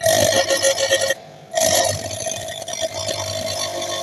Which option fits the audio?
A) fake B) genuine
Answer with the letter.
B